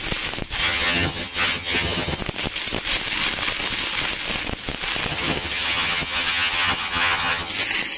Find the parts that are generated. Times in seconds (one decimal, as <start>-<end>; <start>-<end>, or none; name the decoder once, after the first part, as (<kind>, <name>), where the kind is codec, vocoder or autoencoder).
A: 0.6-2.2 (vocoder, HiFi-GAN); 5.1-7.5